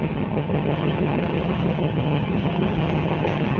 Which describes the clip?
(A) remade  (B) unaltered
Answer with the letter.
A